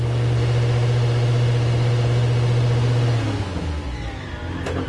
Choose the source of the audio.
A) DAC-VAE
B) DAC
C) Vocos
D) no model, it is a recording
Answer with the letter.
D